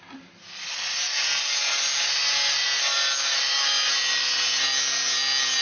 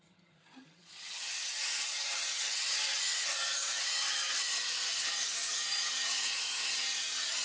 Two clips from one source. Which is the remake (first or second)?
second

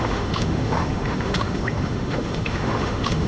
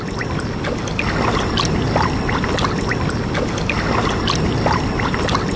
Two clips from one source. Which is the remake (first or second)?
first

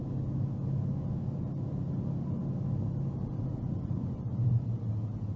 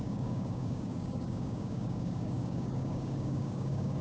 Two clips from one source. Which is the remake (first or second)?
second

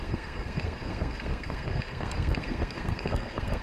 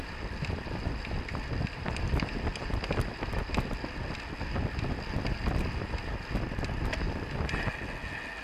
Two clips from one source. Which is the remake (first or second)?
first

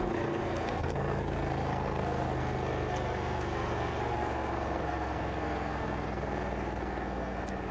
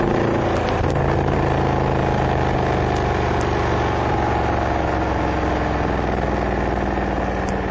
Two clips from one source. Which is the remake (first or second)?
first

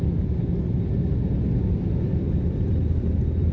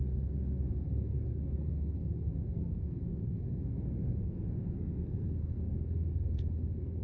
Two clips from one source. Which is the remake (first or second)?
second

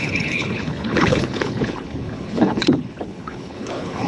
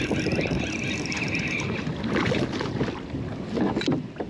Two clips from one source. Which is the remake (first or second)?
first